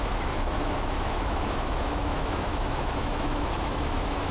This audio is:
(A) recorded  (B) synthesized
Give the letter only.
B